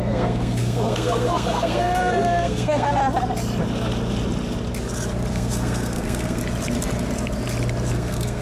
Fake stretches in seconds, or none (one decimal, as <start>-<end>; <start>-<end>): 0.0-3.0; 5.3-6.4; 7.9-8.4